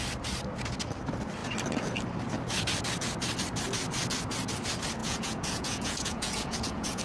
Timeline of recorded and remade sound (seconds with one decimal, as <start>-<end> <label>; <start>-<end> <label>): 0.0-5.0 recorded; 5.0-7.0 remade